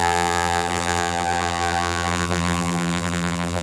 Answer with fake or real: fake